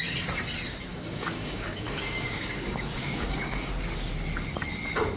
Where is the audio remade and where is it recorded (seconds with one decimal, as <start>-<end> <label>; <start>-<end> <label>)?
0.0-0.9 recorded; 0.9-3.7 remade; 3.7-5.2 recorded